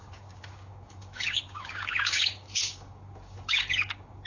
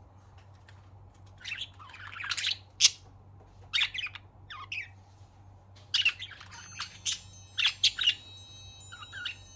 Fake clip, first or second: first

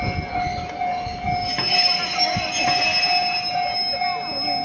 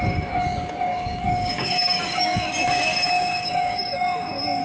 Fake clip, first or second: second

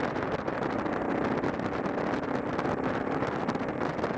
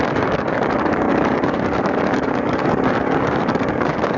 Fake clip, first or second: second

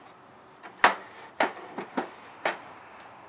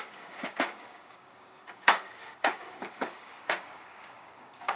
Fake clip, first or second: second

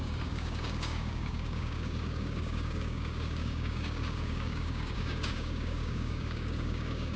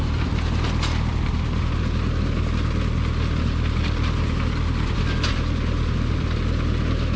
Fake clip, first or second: first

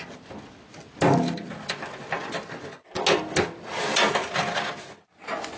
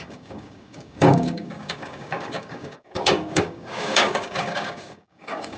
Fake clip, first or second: second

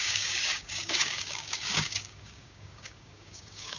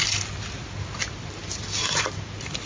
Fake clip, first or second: first